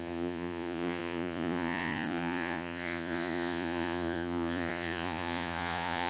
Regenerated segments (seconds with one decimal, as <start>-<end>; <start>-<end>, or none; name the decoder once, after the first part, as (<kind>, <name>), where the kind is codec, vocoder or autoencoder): 0.0-6.1 (vocoder, Vocos)